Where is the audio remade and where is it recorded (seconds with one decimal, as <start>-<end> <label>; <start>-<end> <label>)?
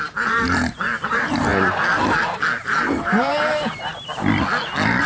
0.0-1.5 remade; 1.5-2.6 recorded; 2.6-3.9 remade; 3.9-5.1 recorded